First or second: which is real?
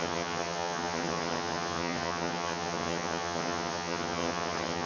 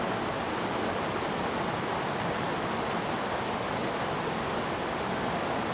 second